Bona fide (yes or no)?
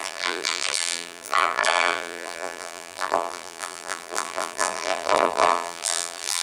no